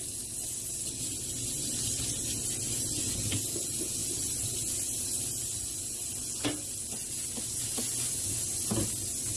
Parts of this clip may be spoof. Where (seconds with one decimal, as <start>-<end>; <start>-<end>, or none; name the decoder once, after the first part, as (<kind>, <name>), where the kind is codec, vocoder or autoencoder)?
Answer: none